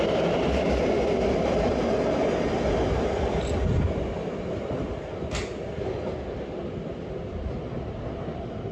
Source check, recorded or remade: recorded